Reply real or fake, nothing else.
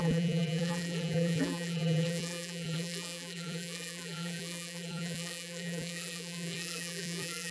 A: fake